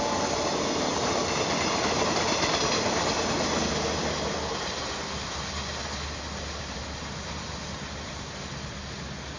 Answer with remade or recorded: recorded